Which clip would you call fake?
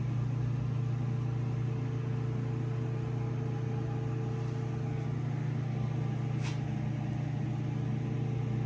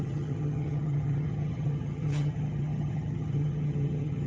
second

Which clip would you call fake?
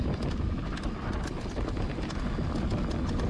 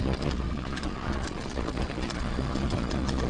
second